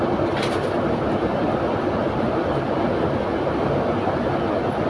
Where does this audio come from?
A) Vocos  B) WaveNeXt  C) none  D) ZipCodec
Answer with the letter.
C